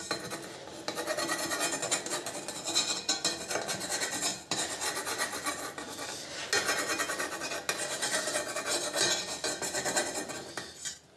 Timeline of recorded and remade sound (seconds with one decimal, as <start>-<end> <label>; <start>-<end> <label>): 0.0-11.2 recorded